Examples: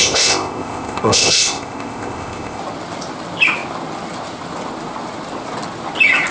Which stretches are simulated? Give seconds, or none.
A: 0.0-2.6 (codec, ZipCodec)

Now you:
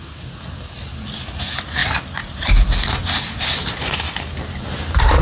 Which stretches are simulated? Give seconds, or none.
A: none